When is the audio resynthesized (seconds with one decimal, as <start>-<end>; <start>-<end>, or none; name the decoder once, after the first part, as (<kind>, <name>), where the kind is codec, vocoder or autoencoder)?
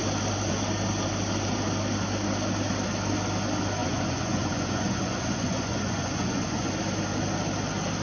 3.8-6.7 (vocoder, Vocos)